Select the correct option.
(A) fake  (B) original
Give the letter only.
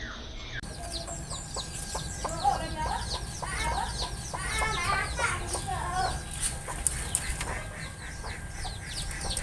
B